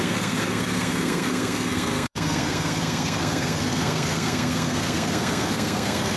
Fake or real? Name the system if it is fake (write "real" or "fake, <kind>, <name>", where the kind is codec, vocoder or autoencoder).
fake, codec, SNAC